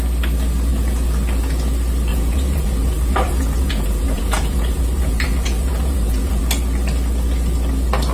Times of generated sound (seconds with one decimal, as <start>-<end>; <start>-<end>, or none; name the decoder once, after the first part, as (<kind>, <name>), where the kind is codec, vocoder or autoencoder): 2.1-6.4 (vocoder, Vocos)